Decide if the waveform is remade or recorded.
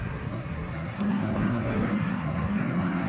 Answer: remade